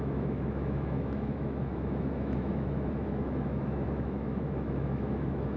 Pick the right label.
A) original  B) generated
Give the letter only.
B